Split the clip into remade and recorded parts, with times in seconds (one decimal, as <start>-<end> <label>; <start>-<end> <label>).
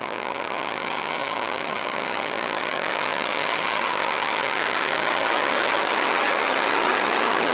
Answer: 0.0-7.5 remade